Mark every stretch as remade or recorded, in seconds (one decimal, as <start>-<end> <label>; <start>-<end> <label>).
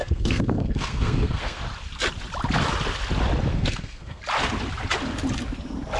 0.0-1.6 remade; 1.6-3.5 recorded; 3.5-4.2 remade; 4.2-6.0 recorded